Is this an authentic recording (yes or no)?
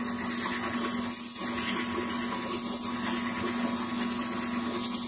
yes